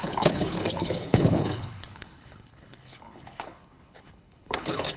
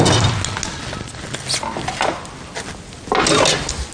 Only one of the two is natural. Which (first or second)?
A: second